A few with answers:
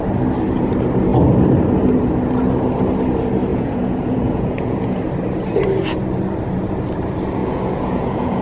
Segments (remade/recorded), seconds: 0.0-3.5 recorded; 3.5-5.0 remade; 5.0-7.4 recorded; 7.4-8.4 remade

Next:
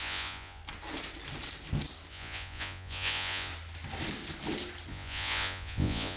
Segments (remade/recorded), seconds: 0.0-0.6 remade; 0.6-2.1 recorded; 2.1-3.5 remade; 3.5-4.9 recorded; 4.9-6.2 remade

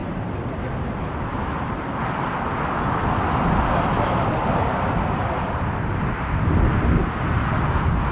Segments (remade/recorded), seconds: 0.0-8.1 recorded

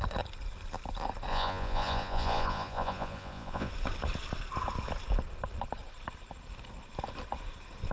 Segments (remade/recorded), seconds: 0.0-1.3 recorded; 1.3-3.7 remade; 3.7-7.9 recorded

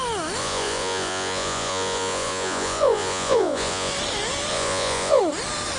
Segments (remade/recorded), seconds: 0.0-0.4 recorded; 0.4-3.9 remade; 3.9-4.5 recorded; 4.5-5.2 remade; 5.2-5.8 recorded

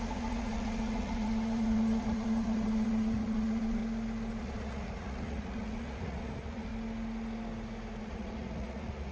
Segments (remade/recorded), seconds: 0.0-3.8 remade; 3.8-4.4 recorded; 4.4-6.7 remade; 6.7-8.0 recorded; 8.0-9.1 remade